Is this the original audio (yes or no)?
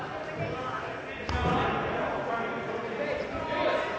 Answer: yes